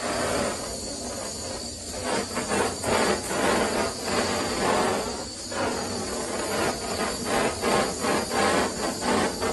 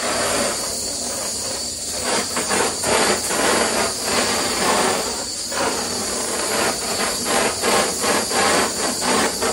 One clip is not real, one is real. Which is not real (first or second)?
second